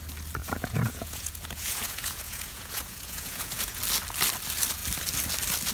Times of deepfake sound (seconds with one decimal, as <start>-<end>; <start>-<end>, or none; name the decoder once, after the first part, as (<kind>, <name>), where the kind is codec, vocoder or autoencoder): 0.4-3.8 (vocoder, Vocos)